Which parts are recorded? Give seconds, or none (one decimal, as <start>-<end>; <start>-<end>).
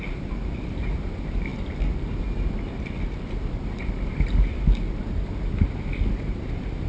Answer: 0.0-6.9